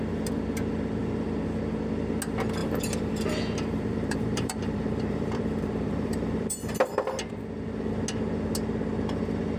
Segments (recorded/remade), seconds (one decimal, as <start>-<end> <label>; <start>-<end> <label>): 0.0-2.6 recorded; 2.6-7.1 remade; 7.1-9.6 recorded